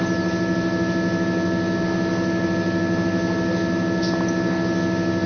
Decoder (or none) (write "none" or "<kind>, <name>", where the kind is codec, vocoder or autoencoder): none